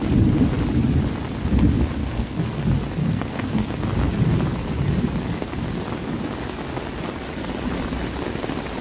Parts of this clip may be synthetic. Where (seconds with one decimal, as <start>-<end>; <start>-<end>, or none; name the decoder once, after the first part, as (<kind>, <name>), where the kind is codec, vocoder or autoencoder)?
2.0-2.6 (codec, SNAC); 3.0-3.7